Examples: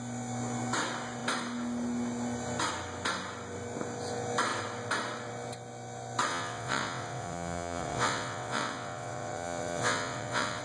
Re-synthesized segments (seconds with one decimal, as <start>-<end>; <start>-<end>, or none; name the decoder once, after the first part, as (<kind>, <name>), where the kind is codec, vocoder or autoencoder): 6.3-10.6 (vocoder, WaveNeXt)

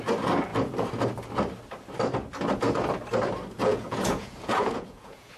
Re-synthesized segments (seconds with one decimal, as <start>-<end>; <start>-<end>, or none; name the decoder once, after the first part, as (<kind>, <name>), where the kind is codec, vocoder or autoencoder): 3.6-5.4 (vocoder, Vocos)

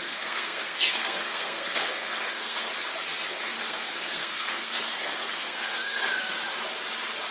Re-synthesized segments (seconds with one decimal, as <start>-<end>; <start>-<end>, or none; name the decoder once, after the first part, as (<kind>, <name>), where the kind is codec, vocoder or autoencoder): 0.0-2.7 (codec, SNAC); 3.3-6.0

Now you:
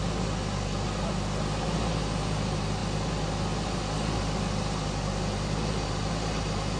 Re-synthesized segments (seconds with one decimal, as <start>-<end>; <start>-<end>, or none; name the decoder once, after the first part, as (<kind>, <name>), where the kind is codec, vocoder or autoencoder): none

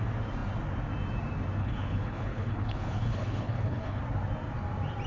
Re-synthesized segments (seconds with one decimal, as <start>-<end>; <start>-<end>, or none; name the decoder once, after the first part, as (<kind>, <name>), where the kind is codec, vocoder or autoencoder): 1.6-4.0 (codec, HILCodec)

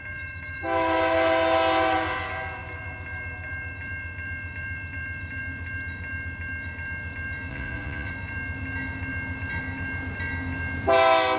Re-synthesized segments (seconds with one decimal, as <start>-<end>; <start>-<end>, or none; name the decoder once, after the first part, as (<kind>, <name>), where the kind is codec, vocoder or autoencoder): 7.5-8.1 (vocoder, Vocos)